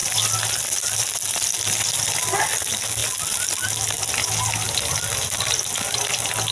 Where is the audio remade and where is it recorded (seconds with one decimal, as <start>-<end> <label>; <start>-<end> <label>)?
0.0-6.5 recorded